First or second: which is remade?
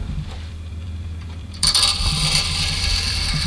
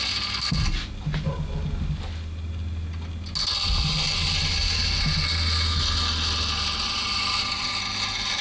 first